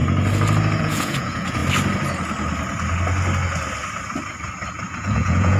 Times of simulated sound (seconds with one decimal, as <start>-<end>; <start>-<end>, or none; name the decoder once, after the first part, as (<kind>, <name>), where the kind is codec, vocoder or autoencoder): 0.8-1.6 (vocoder, Vocos); 5.0-5.6